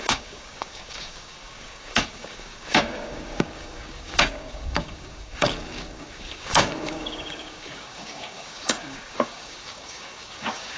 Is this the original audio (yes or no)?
no